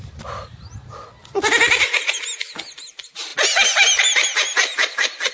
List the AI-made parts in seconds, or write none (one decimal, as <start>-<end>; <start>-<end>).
none